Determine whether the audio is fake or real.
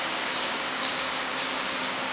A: fake